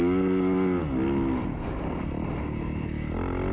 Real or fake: real